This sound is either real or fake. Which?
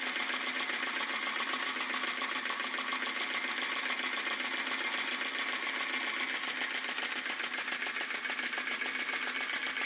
real